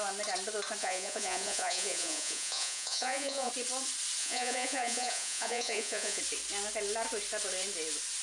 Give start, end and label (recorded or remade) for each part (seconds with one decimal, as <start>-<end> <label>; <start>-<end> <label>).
0.0-0.8 recorded; 0.8-3.5 remade; 3.5-4.2 recorded; 4.2-6.2 remade; 6.2-8.2 recorded